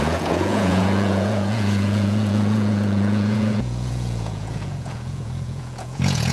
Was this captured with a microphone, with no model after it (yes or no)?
no